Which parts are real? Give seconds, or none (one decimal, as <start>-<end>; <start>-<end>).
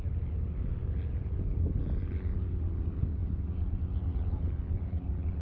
0.0-5.4